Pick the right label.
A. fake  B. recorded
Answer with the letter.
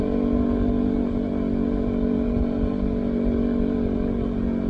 B